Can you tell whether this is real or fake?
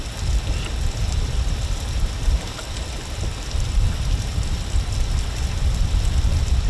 real